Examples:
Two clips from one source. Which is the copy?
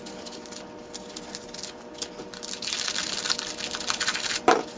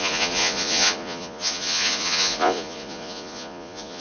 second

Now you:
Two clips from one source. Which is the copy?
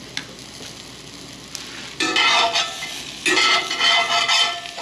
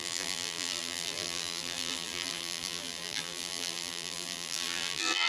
second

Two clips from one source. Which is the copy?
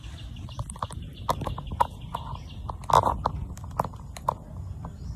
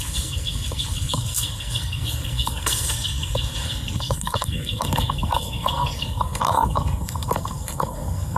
second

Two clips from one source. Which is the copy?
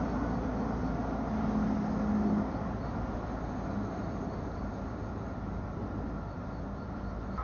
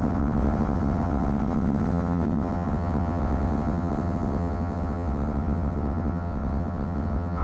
second